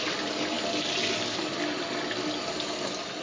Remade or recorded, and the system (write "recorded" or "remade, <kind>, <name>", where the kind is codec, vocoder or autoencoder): recorded